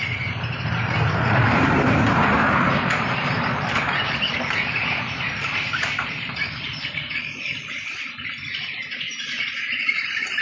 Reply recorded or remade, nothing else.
remade